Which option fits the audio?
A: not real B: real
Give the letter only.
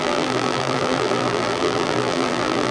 A